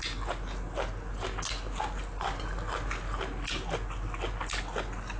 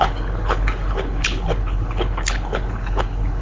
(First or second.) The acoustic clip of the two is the first